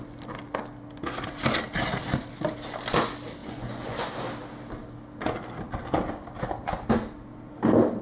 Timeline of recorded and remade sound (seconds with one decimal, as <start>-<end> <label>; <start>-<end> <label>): 0.0-3.4 recorded; 3.4-4.1 remade; 4.1-8.0 recorded